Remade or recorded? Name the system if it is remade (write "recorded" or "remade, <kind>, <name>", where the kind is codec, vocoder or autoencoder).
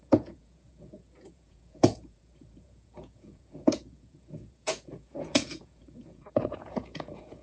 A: remade, vocoder, Vocos